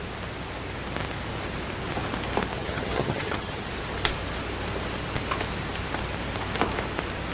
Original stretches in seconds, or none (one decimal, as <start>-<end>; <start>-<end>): 0.0-2.6; 3.7-7.3